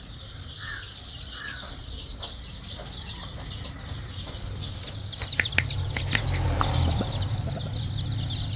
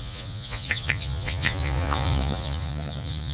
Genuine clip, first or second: first